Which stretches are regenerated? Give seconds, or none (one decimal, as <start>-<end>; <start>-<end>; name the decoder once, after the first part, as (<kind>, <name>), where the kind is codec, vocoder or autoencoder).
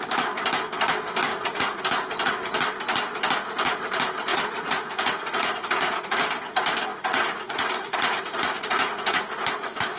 1.3-1.8 (vocoder, Vocos); 4.3-6.2; 6.9-9.2